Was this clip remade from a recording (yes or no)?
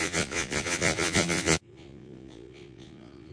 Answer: yes